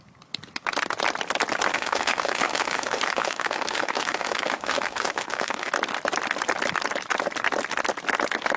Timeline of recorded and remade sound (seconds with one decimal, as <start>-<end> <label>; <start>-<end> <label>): 0.0-1.7 recorded; 1.7-5.7 remade; 5.7-8.6 recorded